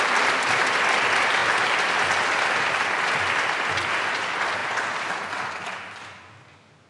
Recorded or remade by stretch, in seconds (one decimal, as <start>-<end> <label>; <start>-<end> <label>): 0.0-6.9 recorded